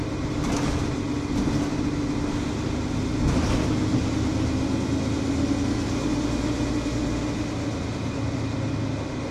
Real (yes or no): yes